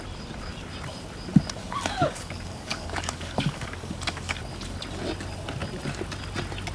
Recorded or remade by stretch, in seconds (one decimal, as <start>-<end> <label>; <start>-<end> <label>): 0.0-1.6 recorded; 1.6-4.4 remade; 4.4-6.7 recorded

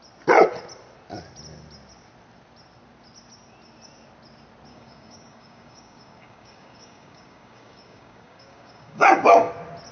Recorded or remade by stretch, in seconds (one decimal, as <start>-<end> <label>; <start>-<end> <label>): 0.0-4.7 recorded; 4.7-9.5 remade; 9.5-9.9 recorded

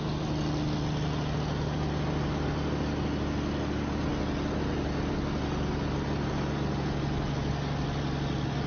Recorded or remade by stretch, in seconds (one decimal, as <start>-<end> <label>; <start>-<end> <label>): 0.0-8.7 recorded

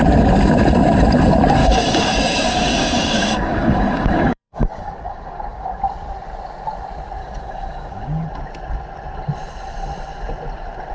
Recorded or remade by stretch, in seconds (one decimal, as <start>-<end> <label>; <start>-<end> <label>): 0.0-1.6 recorded; 1.6-5.8 remade; 5.8-7.2 recorded; 7.2-8.3 remade; 8.3-10.9 recorded